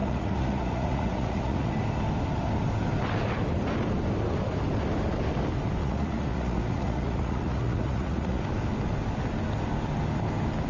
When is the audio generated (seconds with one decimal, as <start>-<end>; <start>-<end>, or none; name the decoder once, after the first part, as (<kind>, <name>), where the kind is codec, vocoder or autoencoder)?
0.0-1.7 (vocoder, Vocos); 5.8-8.4